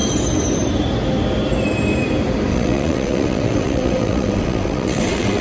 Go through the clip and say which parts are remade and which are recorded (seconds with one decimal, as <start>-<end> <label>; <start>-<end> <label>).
0.0-2.5 recorded; 2.5-5.4 remade